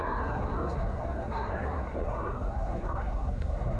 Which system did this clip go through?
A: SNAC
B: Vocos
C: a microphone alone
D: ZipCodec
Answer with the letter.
A